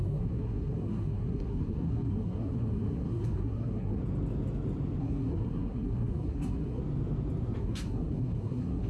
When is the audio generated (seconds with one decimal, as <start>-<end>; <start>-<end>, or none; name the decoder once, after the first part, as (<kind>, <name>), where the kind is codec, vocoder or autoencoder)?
0.0-4.0 (codec, SNAC); 5.0-6.8; 7.6-8.9